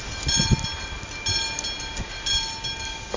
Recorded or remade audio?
recorded